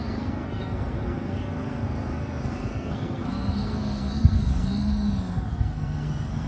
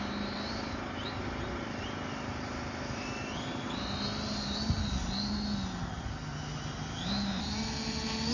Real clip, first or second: second